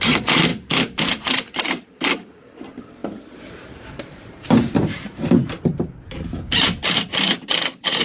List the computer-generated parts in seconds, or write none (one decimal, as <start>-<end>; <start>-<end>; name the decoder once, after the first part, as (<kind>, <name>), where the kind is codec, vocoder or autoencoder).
0.0-8.0 (vocoder, BigVGAN v2)